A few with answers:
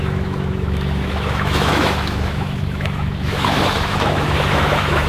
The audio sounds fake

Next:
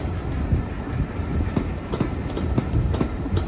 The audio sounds real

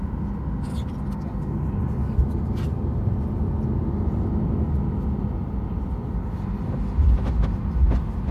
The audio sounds real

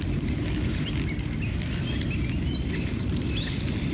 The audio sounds real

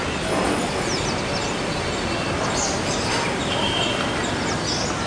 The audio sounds real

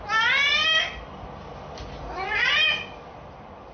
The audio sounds real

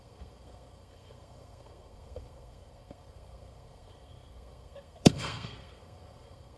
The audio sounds fake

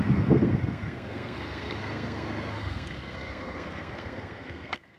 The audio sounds fake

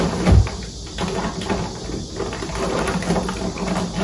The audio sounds fake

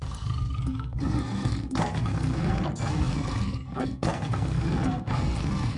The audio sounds fake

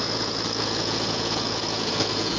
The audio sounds fake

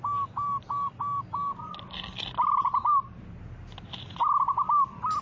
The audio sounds real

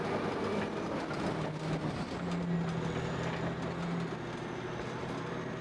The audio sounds real